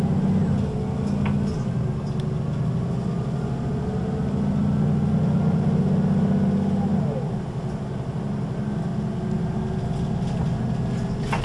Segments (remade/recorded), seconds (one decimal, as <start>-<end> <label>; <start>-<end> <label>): 0.0-11.4 recorded

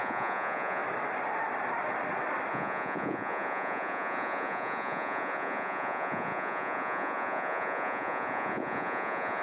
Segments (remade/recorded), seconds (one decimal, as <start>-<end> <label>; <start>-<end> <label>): 0.0-0.8 remade; 0.8-2.5 recorded; 2.5-9.4 remade

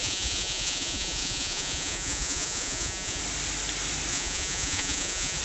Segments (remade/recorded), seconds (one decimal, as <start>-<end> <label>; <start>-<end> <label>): 0.0-3.2 remade; 3.2-4.1 recorded; 4.1-5.4 remade

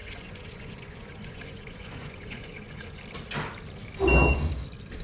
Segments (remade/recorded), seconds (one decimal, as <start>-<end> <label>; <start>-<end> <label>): 0.0-3.0 remade; 3.0-5.0 recorded

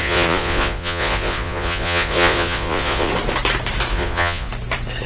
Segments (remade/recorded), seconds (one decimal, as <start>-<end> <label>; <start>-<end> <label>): 0.0-3.1 remade; 3.1-3.9 recorded; 3.9-4.5 remade; 4.5-5.1 recorded

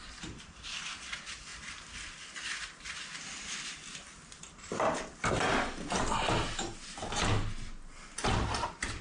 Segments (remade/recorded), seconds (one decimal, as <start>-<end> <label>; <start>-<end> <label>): 0.0-9.0 recorded

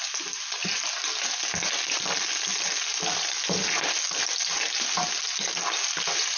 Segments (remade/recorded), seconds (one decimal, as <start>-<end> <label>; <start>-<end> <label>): 0.0-6.4 recorded